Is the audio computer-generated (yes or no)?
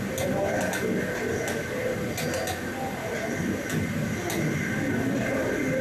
no